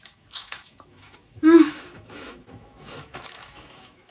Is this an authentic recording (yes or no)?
no